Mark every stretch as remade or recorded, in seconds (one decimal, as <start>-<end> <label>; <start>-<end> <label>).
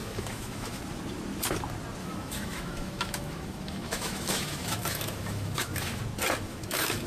0.0-0.8 remade; 0.8-2.0 recorded; 2.0-6.0 remade; 6.0-6.5 recorded; 6.5-7.1 remade